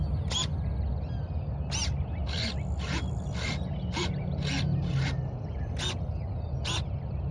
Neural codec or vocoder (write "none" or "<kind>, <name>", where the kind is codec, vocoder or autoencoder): none